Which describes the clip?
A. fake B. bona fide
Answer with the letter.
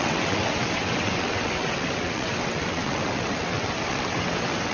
A